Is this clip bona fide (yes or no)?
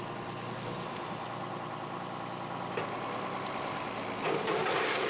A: yes